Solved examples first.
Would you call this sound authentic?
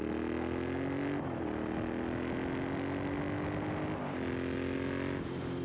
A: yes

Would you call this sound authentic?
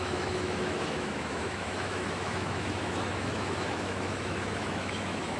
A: no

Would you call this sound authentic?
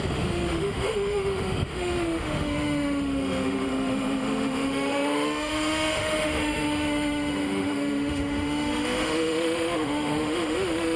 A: no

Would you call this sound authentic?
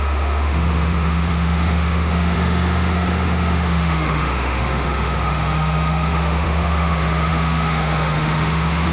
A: no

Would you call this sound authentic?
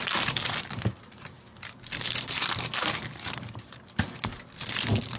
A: yes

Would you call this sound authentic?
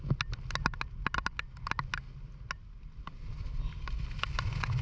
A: yes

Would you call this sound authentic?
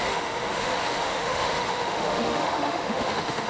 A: no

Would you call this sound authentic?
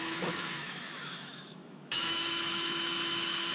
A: no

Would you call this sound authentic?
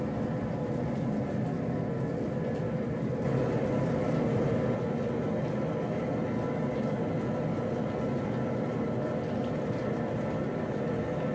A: yes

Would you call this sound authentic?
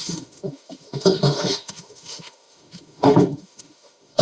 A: no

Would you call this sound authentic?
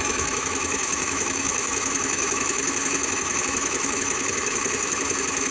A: no